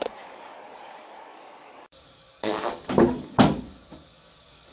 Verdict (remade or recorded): remade